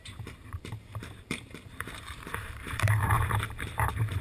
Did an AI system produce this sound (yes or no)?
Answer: yes